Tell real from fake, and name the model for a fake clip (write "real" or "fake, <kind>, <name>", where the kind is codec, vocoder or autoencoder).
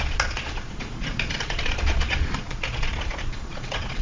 fake, vocoder, Vocos